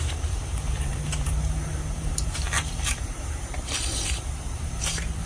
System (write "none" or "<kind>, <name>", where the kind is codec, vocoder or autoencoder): vocoder, BigVGAN v2